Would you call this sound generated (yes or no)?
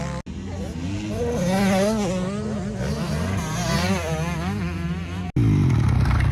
no